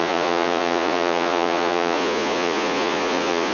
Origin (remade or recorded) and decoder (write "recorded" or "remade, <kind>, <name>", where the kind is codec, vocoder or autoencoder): remade, vocoder, Vocos